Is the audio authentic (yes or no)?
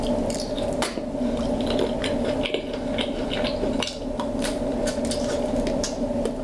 yes